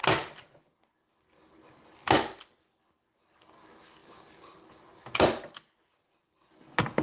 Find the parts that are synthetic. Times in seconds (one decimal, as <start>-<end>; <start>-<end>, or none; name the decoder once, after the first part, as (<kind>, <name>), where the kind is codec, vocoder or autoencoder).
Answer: none